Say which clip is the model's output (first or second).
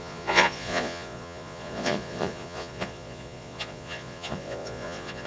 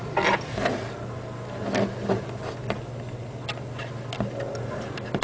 first